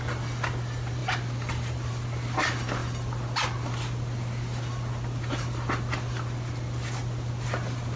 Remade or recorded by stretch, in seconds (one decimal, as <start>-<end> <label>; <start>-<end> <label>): 0.0-8.0 recorded